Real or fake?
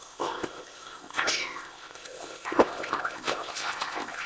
fake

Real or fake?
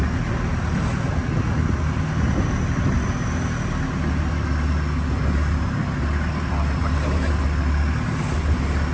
real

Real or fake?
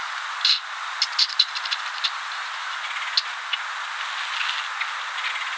real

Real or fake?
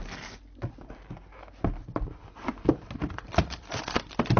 real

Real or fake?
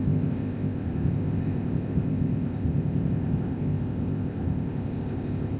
fake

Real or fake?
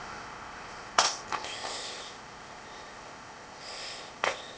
fake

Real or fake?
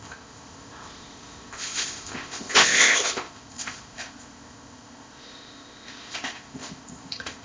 fake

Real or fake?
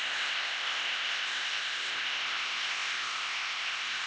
fake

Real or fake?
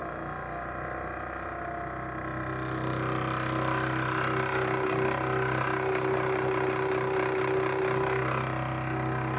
real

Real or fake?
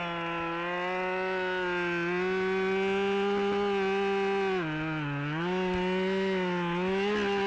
real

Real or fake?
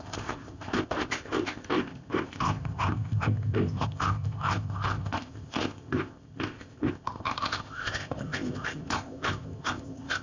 fake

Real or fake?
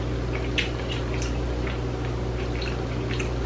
real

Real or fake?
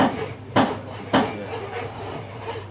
real